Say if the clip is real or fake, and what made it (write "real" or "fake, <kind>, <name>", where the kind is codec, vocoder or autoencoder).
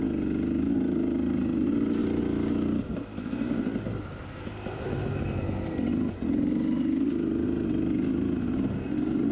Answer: real